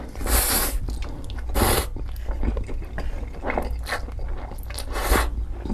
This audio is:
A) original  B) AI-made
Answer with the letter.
A